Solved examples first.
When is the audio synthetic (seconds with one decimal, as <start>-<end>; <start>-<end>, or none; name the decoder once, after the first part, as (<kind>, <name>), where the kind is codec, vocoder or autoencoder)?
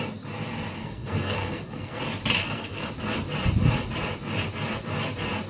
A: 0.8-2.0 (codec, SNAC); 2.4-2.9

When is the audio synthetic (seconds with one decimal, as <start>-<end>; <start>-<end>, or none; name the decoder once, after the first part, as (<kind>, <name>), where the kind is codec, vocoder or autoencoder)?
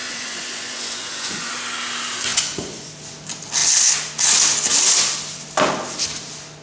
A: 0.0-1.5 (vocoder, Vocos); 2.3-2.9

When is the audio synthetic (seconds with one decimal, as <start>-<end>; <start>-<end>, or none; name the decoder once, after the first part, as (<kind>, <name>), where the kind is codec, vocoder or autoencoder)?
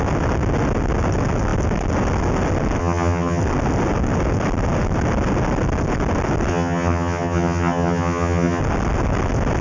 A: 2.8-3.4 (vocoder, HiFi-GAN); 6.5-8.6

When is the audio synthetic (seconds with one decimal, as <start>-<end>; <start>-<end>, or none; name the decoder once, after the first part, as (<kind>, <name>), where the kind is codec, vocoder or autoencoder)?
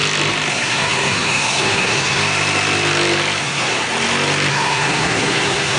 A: 0.5-2.2 (codec, SNAC); 3.4-3.8; 4.5-5.8